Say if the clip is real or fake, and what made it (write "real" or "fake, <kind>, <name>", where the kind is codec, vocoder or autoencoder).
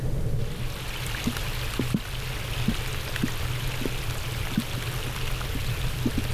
real